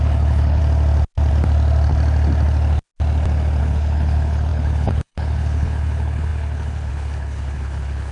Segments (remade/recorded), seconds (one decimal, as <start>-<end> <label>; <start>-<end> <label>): 0.0-0.6 remade; 0.6-3.6 recorded; 3.6-8.1 remade